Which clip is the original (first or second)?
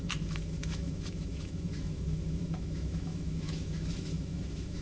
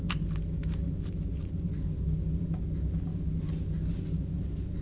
second